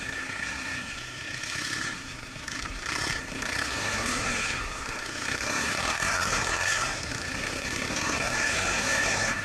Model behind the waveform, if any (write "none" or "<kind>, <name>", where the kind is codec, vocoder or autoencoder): codec, SNAC